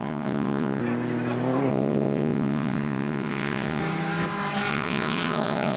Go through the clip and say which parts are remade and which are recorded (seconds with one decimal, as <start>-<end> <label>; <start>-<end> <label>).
0.0-0.8 remade; 0.8-1.7 recorded; 1.7-3.8 remade; 3.8-4.7 recorded; 4.7-5.8 remade